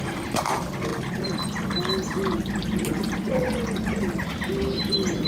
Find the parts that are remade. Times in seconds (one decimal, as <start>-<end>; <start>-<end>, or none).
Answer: none